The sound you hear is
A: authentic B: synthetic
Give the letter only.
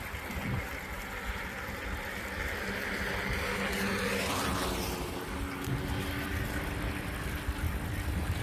A